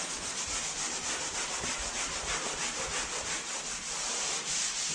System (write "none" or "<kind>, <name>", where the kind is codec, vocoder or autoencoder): none